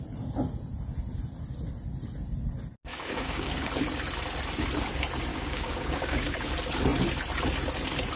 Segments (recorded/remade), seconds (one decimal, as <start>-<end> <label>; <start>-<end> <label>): 0.0-2.9 recorded; 2.9-3.7 remade; 3.7-5.3 recorded; 5.3-6.5 remade; 6.5-8.2 recorded